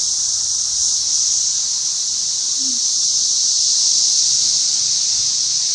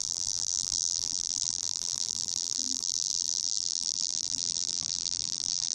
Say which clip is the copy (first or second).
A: second